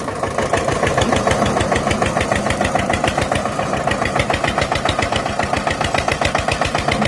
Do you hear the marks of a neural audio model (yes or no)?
no